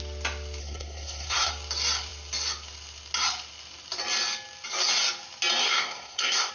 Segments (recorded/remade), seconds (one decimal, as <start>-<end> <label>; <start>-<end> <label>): 0.0-0.6 recorded; 0.6-1.5 remade; 1.5-5.6 recorded; 5.6-6.5 remade